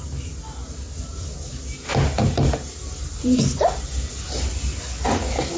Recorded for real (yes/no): yes